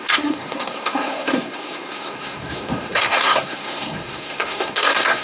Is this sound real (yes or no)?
no